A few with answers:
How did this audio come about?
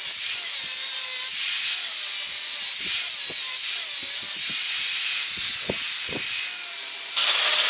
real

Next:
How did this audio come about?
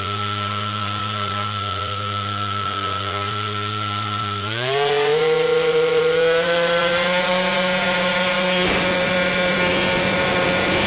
fake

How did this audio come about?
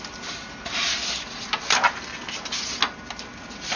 real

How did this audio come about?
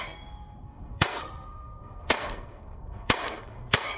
fake